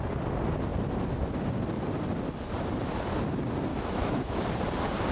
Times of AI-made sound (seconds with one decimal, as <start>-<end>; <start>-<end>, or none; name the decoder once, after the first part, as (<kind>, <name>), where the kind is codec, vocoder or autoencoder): 3.7-4.4 (autoencoder, DAC-VAE)